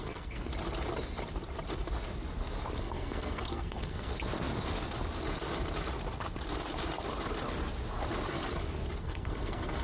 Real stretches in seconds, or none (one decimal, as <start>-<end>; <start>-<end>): 0.5-2.8; 4.1-9.0